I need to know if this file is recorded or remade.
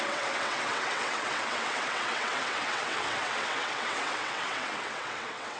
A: remade